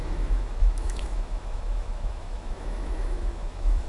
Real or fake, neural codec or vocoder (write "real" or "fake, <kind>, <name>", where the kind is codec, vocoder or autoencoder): fake, autoencoder, DAC-VAE